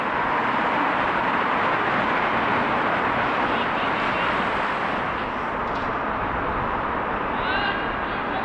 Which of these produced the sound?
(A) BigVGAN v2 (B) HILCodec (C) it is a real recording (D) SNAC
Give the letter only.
C